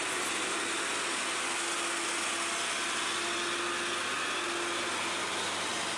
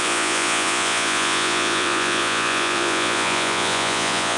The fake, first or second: second